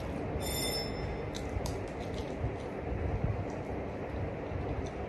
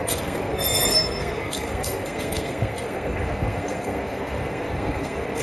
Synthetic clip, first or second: second